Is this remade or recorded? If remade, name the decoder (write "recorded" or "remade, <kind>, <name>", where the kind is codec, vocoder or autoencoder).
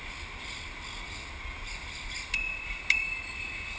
recorded